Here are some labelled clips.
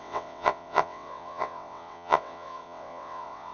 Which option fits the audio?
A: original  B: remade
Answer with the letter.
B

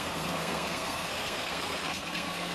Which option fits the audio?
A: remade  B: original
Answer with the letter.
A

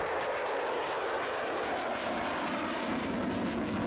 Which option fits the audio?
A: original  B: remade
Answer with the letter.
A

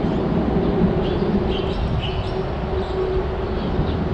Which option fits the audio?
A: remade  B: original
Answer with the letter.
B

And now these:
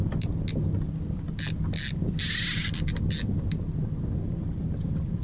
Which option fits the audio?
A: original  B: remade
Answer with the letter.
A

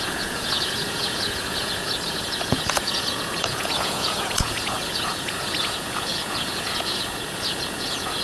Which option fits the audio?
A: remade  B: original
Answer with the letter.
A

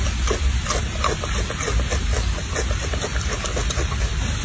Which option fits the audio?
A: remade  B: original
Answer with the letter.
B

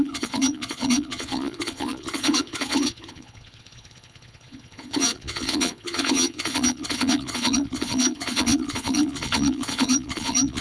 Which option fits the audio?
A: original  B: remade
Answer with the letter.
B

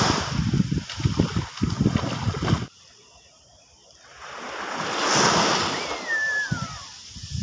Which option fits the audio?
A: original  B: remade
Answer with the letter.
A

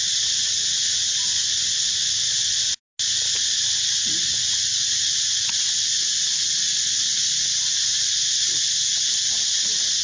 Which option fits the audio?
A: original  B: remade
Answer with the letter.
A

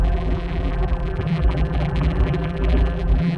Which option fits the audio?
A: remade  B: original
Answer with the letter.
A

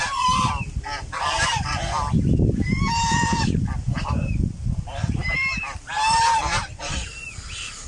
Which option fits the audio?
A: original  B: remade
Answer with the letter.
B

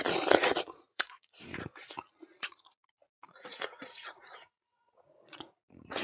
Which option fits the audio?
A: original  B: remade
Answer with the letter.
B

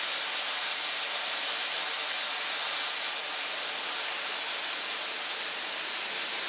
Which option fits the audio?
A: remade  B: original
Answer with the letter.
B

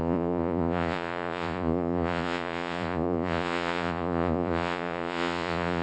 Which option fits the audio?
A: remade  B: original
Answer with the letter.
A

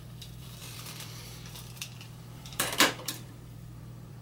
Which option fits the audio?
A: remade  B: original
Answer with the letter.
A